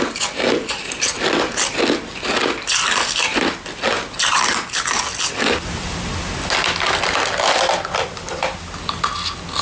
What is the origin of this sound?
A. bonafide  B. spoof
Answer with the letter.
A